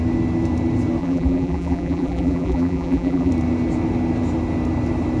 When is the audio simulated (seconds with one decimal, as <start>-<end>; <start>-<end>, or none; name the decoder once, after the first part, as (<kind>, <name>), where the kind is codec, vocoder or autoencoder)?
1.0-3.3 (vocoder, BigVGAN v2)